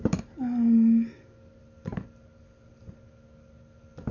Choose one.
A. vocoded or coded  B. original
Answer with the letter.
B